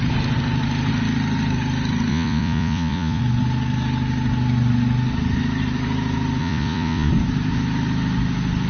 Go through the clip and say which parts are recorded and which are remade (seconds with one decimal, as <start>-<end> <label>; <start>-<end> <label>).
0.0-2.1 recorded; 2.1-3.2 remade; 3.2-6.4 recorded; 6.4-7.1 remade; 7.1-8.7 recorded